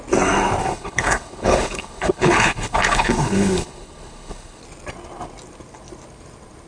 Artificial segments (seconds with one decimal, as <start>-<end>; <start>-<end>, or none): 0.6-4.6